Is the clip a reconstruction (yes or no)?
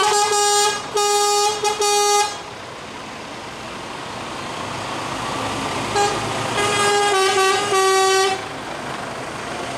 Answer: no